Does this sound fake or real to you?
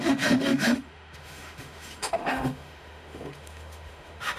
fake